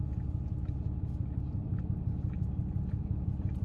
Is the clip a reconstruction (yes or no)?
no